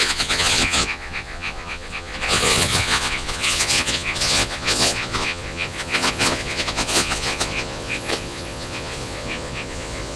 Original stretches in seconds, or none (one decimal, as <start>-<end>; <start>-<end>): none